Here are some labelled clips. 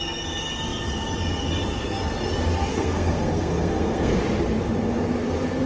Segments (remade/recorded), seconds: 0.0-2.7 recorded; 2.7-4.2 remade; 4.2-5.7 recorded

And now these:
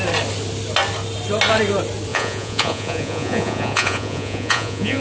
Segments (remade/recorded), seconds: 0.0-2.1 recorded; 2.1-5.0 remade

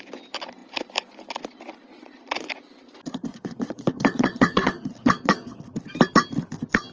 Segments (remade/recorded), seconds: 0.0-1.9 recorded; 1.9-2.5 remade; 2.5-3.3 recorded; 3.3-5.6 remade; 5.6-6.9 recorded

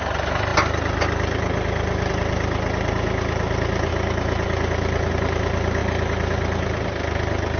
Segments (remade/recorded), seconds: 0.0-7.6 recorded